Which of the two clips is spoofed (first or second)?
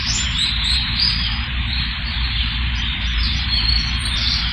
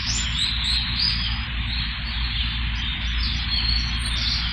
first